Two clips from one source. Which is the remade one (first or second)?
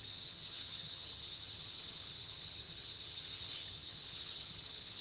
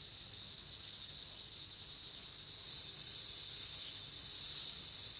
first